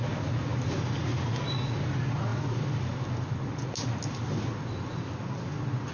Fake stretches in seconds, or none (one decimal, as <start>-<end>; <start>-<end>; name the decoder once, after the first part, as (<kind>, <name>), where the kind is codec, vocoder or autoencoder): none